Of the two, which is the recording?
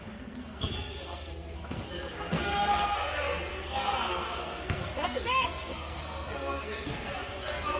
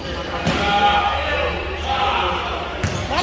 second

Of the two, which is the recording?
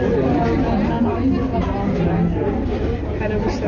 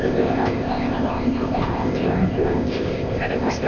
first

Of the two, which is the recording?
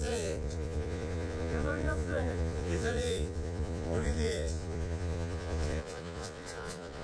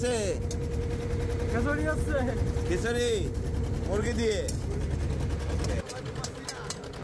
second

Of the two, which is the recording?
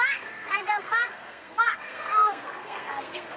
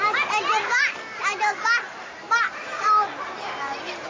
second